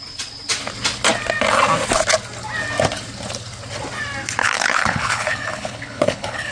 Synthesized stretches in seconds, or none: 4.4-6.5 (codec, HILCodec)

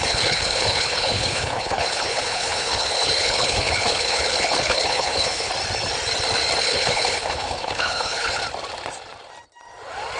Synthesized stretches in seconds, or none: 0.0-5.5 (codec, HILCodec); 6.6-8.4

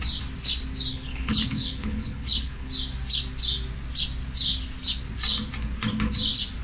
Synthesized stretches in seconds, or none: 0.9-2.7 (codec, HILCodec)

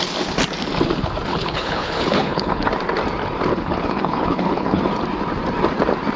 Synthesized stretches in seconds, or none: 1.3-2.7 (codec, HILCodec); 3.5-4.8

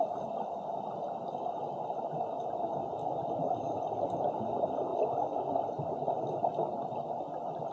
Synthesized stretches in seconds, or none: none